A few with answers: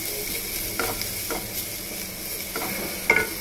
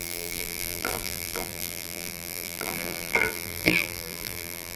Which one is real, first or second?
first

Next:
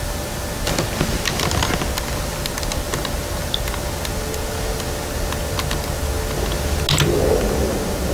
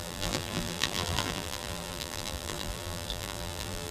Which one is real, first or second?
first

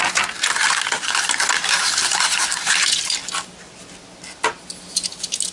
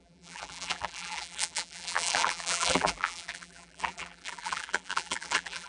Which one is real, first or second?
first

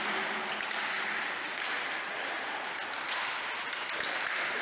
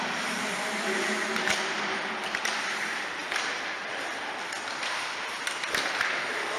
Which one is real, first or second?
first